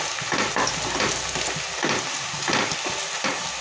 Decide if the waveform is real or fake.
real